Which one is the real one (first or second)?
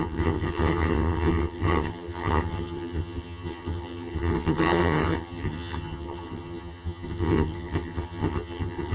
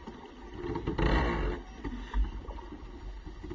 second